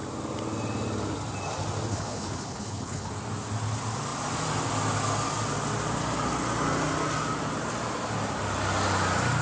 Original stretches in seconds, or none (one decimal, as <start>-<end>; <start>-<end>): 0.0-1.9; 3.1-9.4